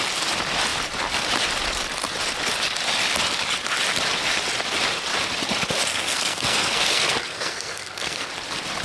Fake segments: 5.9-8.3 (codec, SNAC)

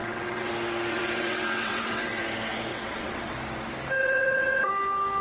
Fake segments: 0.0-0.5 (vocoder, WaveNeXt); 0.9-2.2; 2.7-3.3; 4.0-4.7

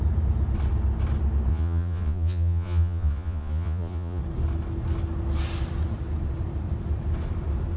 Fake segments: 1.5-4.2 (vocoder, Vocos)

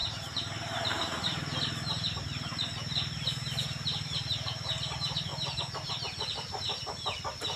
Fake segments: 0.0-5.3 (vocoder, BigVGAN v2); 5.9-7.6

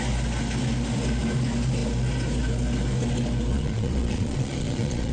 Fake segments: 3.5-5.1 (vocoder, Vocos)

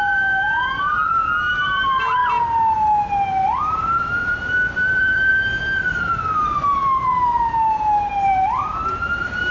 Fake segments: 0.0-2.2 (vocoder, BigVGAN v2); 3.3-9.5

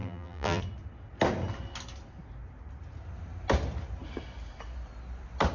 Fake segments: 0.0-0.6 (vocoder, BigVGAN v2)

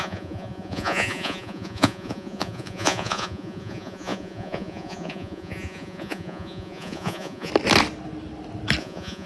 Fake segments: 0.0-7.5 (vocoder, Vocos); 8.8-9.3